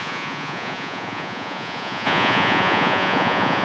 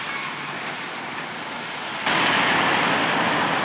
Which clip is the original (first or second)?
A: second